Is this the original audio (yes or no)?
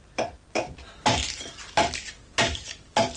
yes